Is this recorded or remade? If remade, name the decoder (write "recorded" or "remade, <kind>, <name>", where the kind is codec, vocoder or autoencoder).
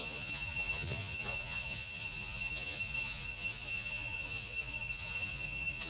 remade, vocoder, Vocos